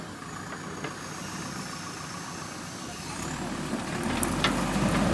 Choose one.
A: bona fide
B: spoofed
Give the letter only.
A